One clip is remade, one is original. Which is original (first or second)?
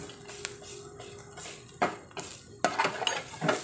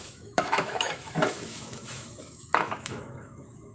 first